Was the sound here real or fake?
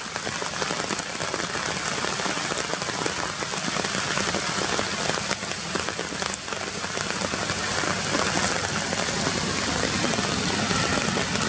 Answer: real